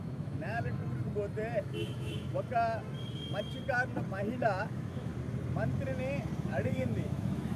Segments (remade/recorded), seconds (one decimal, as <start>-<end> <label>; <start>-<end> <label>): 0.0-0.8 remade; 0.8-1.6 recorded; 1.6-2.3 remade; 2.3-4.6 recorded; 4.6-5.1 remade; 5.1-6.4 recorded; 6.4-7.6 remade